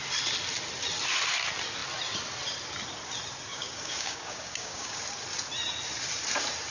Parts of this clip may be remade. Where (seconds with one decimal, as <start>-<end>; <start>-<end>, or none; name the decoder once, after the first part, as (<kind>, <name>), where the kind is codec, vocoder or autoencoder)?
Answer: 3.5-5.0 (codec, DAC)